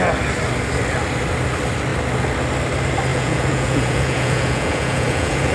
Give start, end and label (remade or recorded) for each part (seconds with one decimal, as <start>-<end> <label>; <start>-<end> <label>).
0.0-3.1 recorded; 3.1-5.5 remade